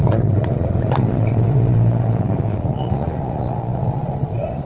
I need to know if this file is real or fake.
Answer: fake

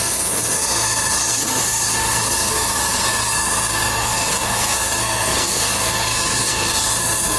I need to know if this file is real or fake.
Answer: fake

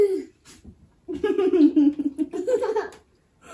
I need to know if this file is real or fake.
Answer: real